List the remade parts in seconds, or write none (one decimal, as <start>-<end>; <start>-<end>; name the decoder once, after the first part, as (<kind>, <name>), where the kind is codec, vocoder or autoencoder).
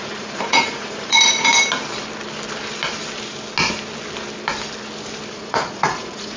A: 0.0-1.5 (vocoder, Vocos); 5.3-6.4